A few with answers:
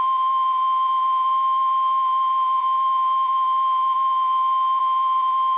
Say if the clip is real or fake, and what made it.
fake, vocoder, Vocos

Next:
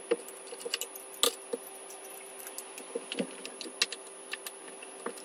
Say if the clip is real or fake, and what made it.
real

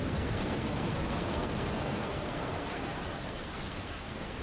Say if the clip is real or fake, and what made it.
fake, codec, SNAC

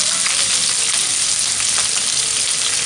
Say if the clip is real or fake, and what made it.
real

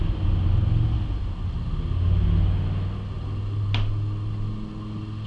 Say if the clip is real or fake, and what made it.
real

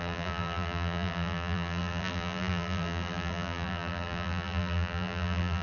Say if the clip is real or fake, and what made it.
fake, vocoder, BigVGAN v2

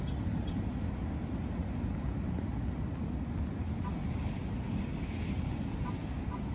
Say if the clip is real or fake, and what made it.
real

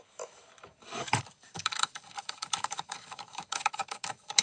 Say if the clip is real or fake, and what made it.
fake, codec, DAC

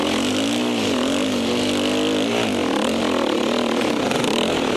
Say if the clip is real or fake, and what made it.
real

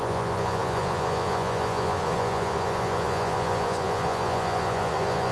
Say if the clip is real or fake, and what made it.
fake, vocoder, Vocos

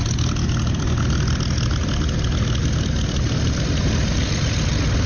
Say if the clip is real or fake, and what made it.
real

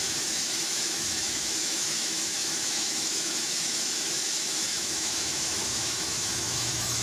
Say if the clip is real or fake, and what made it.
fake, autoencoder, DAC-VAE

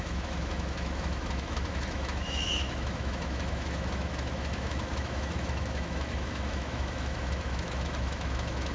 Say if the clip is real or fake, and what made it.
fake, autoencoder, DAC-VAE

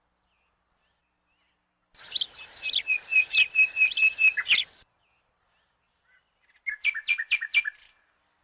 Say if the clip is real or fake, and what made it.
real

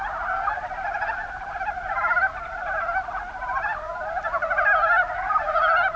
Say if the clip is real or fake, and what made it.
real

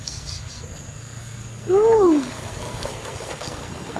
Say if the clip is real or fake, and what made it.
fake, codec, SNAC